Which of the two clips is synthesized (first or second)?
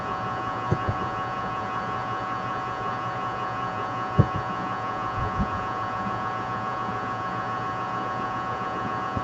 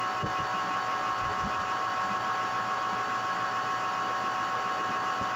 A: first